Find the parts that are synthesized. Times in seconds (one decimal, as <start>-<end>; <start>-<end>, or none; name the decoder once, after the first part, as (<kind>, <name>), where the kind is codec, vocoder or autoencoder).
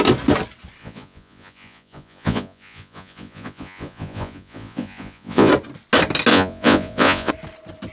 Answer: 0.8-5.5 (vocoder, Vocos); 6.3-7.3